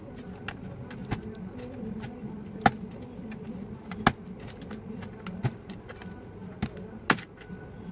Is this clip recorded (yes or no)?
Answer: yes